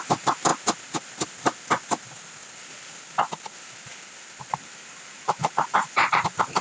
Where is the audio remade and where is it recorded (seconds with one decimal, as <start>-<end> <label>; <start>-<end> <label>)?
0.0-0.5 remade; 0.5-4.5 recorded; 4.5-6.6 remade